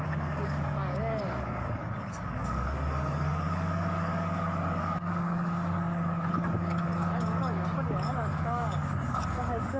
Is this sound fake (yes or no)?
yes